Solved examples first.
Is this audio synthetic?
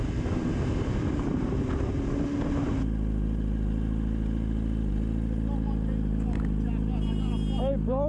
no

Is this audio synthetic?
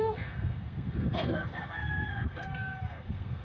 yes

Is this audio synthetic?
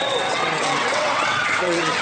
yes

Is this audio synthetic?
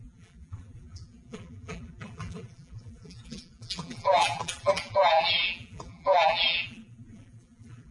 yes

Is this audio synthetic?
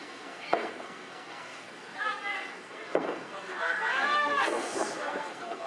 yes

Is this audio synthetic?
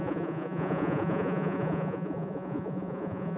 yes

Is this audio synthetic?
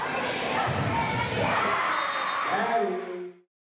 no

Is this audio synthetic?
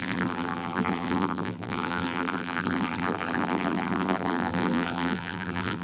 yes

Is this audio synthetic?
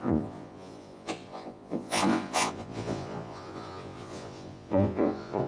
yes